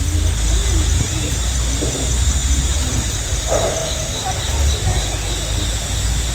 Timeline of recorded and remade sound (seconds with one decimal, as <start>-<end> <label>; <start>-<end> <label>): 0.0-0.6 recorded; 0.6-1.6 remade; 1.6-2.4 recorded; 2.4-3.4 remade; 3.4-6.3 recorded